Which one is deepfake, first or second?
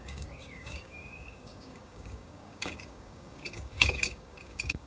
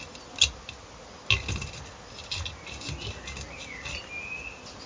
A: first